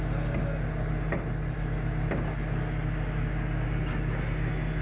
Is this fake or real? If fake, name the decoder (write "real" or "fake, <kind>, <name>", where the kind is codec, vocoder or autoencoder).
real